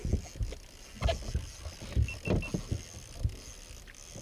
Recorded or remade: recorded